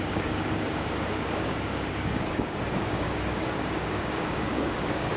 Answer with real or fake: fake